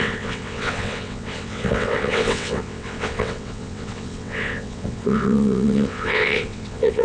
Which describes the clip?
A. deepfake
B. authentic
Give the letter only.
A